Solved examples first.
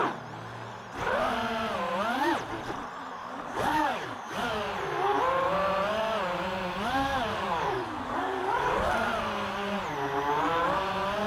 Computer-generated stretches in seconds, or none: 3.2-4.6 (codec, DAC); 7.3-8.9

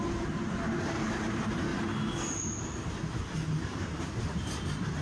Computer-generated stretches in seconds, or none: 0.0-1.7 (vocoder, BigVGAN v2); 3.6-5.0

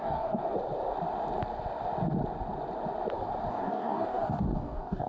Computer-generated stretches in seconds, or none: 0.0-0.4 (codec, DAC); 3.5-5.1

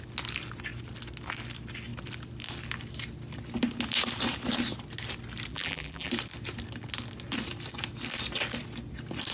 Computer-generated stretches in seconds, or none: 5.5-6.1 (vocoder, BigVGAN v2)

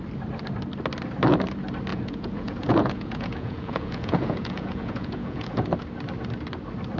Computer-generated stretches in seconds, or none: 1.9-5.7 (vocoder, Vocos)

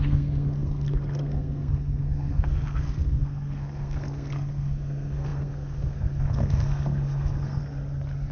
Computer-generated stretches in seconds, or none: 0.0-7.6 (codec, SNAC)

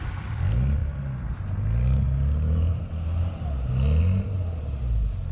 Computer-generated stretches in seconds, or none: none